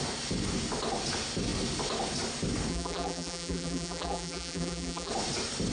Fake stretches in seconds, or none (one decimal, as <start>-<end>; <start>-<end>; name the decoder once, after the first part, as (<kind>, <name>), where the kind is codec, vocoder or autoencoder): 2.7-5.1 (vocoder, BigVGAN v2)